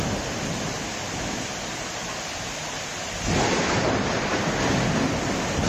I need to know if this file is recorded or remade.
recorded